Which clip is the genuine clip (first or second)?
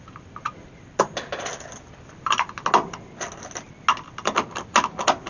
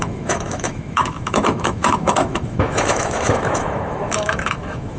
first